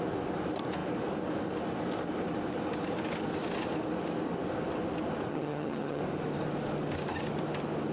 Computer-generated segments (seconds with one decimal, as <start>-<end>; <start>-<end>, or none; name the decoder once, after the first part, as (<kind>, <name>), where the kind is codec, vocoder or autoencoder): 5.3-6.0 (vocoder, HiFi-GAN)